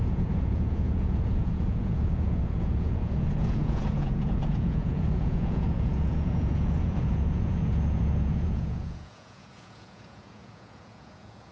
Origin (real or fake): fake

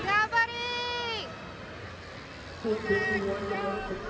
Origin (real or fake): real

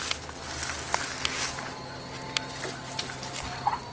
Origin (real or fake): real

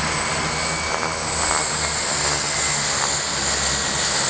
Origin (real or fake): real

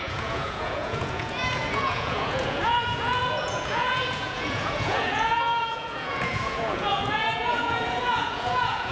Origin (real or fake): fake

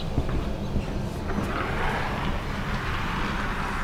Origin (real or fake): real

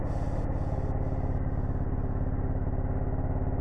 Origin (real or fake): real